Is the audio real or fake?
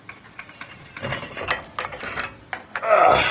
real